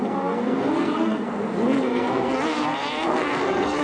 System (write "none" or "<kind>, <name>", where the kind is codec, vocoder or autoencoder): codec, SNAC